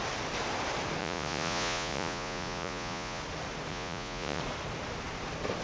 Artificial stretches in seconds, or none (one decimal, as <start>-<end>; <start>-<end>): 1.0-3.2; 3.7-4.4